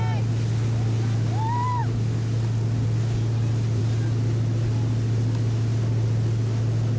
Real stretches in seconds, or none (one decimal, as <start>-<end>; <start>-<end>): 0.0-7.0